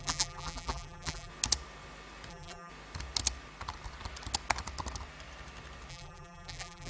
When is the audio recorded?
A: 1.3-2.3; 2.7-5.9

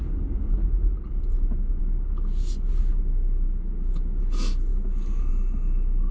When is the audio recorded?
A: 0.0-6.1

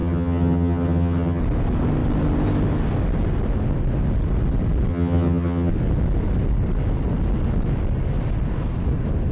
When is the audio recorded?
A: 1.4-4.9; 5.7-9.3

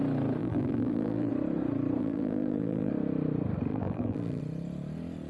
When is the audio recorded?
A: 0.0-0.4; 1.3-2.0; 2.9-3.7; 4.4-5.3

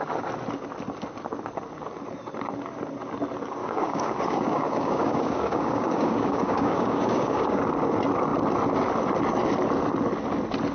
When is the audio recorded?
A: 0.0-3.6; 7.6-10.7